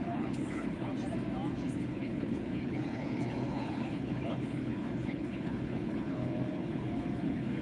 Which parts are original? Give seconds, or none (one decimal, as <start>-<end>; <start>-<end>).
0.9-1.5